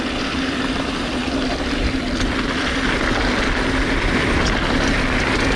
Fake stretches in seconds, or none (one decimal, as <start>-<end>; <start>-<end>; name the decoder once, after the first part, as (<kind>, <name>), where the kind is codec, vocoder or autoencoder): none